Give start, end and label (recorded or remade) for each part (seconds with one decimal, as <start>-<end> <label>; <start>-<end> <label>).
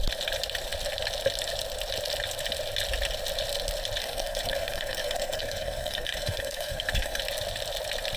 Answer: 0.0-4.0 recorded; 4.0-7.2 remade; 7.2-8.2 recorded